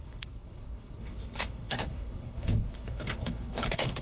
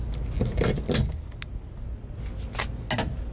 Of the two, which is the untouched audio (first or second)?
second